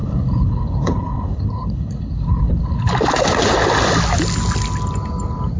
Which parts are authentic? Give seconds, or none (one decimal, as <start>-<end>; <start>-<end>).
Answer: 2.8-5.6